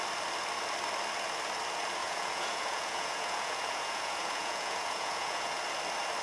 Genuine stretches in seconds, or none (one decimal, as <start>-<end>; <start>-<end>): 0.0-2.0; 5.6-6.2